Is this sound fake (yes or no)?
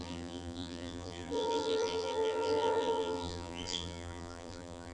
yes